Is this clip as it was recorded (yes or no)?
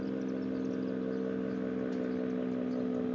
yes